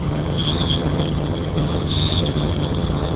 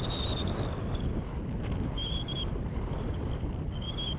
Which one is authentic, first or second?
second